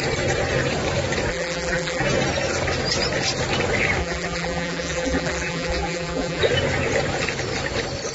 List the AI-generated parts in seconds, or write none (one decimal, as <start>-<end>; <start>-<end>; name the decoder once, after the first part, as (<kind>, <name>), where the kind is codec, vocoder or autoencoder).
1.3-2.0 (vocoder, BigVGAN v2); 4.0-6.4